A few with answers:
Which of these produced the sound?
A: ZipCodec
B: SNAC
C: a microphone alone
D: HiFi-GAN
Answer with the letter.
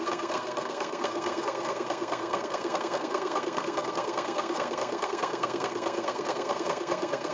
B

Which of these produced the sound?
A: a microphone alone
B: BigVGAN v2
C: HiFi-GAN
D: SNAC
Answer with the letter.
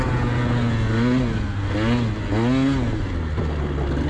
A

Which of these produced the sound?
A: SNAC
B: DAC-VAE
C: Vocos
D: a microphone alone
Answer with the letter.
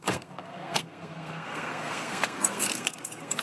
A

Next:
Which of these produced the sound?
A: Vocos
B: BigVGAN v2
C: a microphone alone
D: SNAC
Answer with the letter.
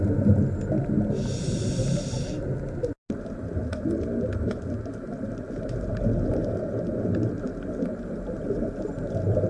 C